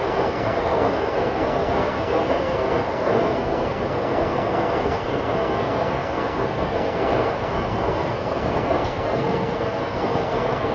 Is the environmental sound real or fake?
fake